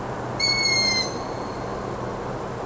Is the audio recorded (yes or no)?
yes